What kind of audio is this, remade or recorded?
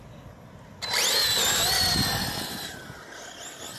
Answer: recorded